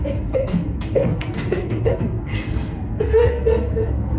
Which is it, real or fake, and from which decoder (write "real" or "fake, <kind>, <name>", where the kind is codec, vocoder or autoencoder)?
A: fake, codec, SNAC